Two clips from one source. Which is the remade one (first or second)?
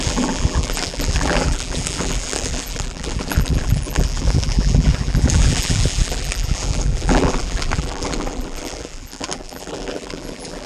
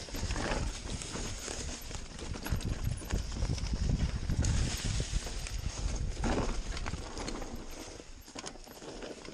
first